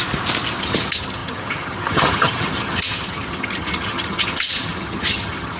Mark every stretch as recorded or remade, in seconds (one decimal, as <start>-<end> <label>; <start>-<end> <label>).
0.0-0.6 recorded; 0.6-5.6 remade